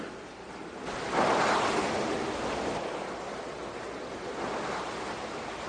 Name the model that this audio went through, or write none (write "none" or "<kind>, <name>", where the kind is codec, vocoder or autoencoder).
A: none